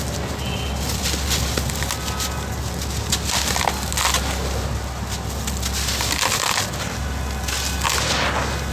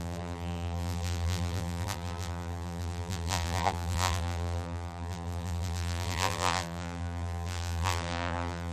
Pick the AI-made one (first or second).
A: second